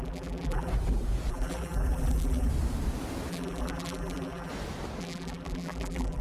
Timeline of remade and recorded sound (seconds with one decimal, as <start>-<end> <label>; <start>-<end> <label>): 0.0-0.7 remade; 0.7-1.3 recorded; 1.3-2.5 remade; 2.5-3.3 recorded; 3.3-4.5 remade; 4.5-5.0 recorded; 5.0-6.2 remade

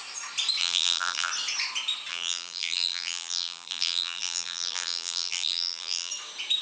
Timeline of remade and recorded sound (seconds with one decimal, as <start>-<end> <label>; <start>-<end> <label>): 0.0-0.6 recorded; 0.6-1.3 remade; 1.3-2.1 recorded; 2.1-6.1 remade; 6.1-6.6 recorded

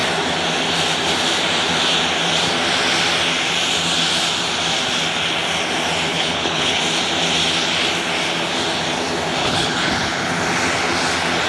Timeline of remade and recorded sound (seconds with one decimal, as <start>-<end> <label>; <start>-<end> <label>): 0.0-6.1 recorded; 6.1-6.8 remade; 6.8-9.4 recorded; 9.4-10.3 remade; 10.3-11.5 recorded

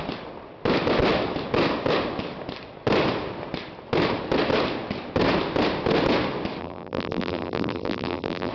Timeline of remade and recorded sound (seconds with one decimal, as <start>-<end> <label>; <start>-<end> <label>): 0.0-6.6 recorded; 6.6-8.5 remade